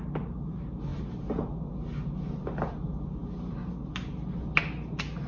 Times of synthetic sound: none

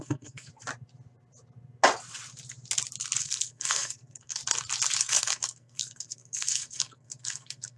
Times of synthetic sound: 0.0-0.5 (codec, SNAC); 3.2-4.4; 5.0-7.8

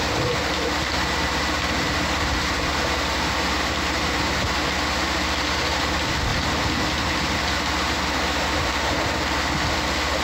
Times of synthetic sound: none

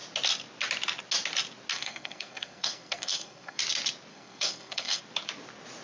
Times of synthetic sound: 1.7-3.6 (codec, SNAC); 4.1-5.0

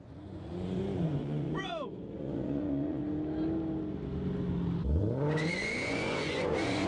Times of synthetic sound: 0.0-3.0 (vocoder, Vocos); 5.0-6.9